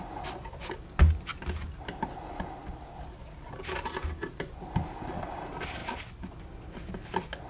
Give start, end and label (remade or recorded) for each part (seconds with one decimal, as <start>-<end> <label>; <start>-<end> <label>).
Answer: 0.0-7.5 recorded